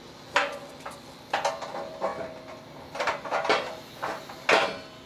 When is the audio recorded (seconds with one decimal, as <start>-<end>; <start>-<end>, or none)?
0.0-5.1